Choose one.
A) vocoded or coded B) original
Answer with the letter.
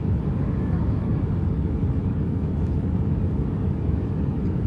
A